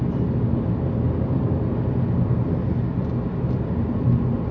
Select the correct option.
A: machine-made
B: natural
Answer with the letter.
B